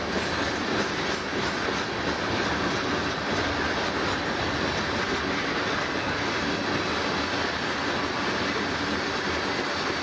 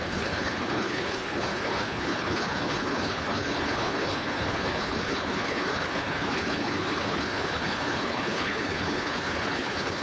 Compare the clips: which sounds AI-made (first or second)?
second